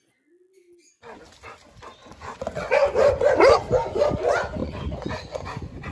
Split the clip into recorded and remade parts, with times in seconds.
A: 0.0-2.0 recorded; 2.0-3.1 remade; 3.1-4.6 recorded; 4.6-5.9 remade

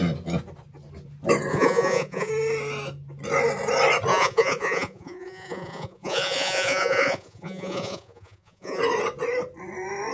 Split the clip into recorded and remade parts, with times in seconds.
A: 0.0-1.5 recorded; 1.5-2.3 remade; 2.3-4.1 recorded; 4.1-8.8 remade; 8.8-10.1 recorded

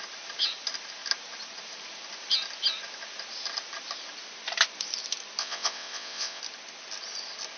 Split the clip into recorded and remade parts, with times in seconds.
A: 0.0-5.4 recorded; 5.4-6.4 remade; 6.4-7.6 recorded

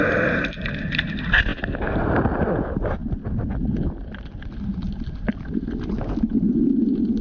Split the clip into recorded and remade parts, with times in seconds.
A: 0.0-7.2 recorded

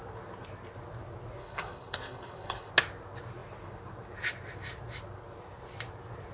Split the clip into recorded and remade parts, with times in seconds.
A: 0.0-1.4 recorded; 1.4-2.7 remade; 2.7-6.3 recorded

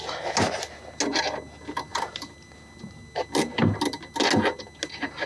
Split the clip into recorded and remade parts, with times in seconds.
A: 0.0-5.3 recorded

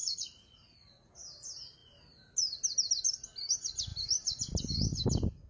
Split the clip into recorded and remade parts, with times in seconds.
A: 0.0-1.1 remade; 1.1-5.5 recorded